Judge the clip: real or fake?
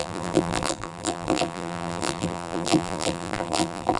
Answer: fake